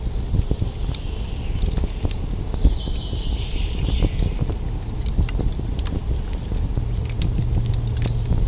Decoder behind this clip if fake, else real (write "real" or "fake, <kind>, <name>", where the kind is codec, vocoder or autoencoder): real